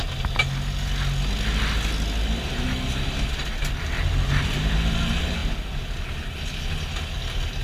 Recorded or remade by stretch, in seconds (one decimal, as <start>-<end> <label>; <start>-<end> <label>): 0.0-7.6 recorded